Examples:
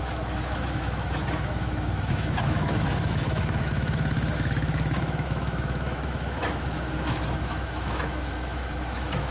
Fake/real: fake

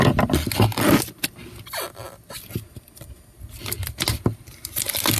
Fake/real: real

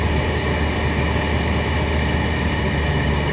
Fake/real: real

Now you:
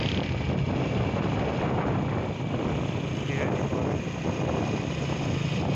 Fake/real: real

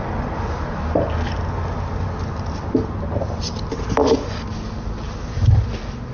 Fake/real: real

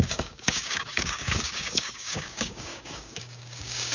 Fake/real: fake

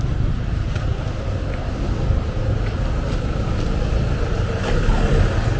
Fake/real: real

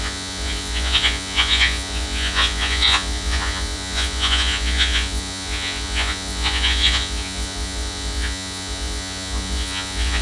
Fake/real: fake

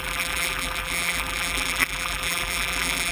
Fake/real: fake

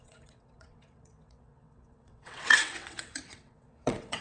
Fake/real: fake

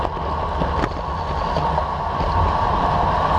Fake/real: real